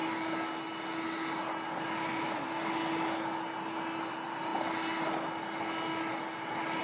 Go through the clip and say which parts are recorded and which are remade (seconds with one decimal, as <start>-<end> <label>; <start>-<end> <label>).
0.0-4.1 recorded; 4.1-4.5 remade; 4.5-6.8 recorded